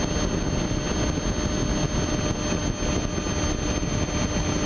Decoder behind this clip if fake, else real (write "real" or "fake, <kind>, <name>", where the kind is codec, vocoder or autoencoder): real